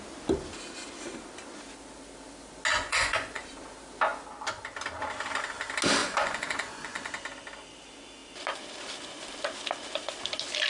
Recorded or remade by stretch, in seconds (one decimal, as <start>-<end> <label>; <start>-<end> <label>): 0.0-2.7 recorded; 2.7-3.4 remade; 3.4-6.0 recorded; 6.0-7.1 remade; 7.1-10.7 recorded

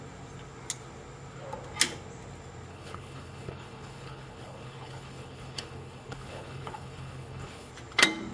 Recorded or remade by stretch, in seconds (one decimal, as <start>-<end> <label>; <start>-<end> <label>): 0.0-2.7 recorded; 2.7-7.7 remade; 7.7-8.3 recorded

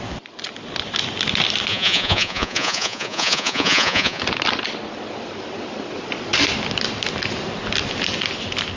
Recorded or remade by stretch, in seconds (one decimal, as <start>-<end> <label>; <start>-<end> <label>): 0.0-1.7 recorded; 1.7-4.2 remade; 4.2-8.8 recorded

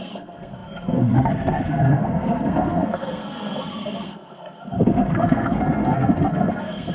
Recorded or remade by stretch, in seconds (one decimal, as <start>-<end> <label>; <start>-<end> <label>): 0.0-6.9 remade

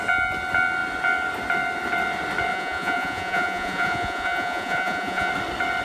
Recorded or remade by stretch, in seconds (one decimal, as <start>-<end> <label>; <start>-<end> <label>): 0.0-2.5 recorded; 2.5-5.3 remade; 5.3-5.8 recorded

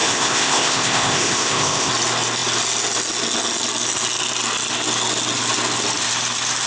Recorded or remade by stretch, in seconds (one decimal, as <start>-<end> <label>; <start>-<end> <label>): 0.0-1.9 remade; 1.9-6.7 recorded

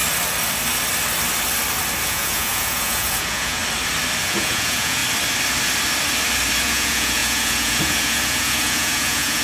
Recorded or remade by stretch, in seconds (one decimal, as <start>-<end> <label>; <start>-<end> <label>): 0.0-2.0 recorded; 2.0-3.6 remade; 3.6-4.2 recorded; 4.2-5.0 remade; 5.0-6.6 recorded; 6.6-9.4 remade